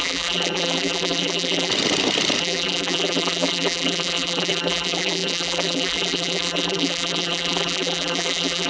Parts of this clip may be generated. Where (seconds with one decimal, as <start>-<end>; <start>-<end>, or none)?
0.0-1.7; 2.4-8.7